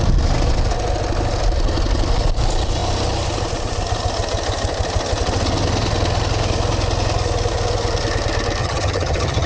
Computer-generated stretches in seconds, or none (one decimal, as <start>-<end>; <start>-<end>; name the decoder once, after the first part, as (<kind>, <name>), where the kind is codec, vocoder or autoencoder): 8.6-9.5 (vocoder, HiFi-GAN)